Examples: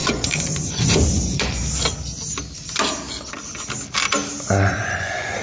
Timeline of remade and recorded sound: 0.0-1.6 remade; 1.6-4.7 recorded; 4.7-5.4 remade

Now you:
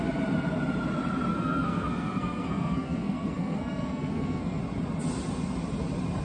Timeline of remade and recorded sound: 0.0-1.3 recorded; 1.3-4.6 remade; 4.6-6.2 recorded

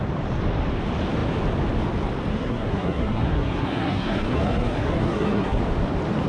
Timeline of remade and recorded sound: 0.0-2.3 recorded; 2.3-5.6 remade; 5.6-6.3 recorded